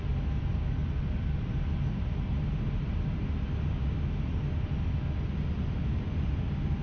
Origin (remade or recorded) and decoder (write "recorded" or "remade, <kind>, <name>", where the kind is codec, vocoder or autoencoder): recorded